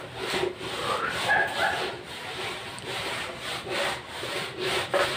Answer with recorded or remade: recorded